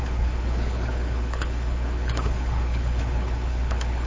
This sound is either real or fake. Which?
fake